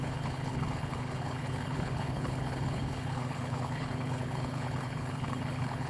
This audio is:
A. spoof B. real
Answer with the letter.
A